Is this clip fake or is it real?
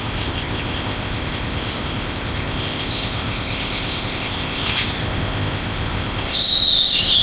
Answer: fake